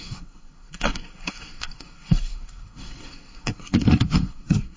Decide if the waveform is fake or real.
fake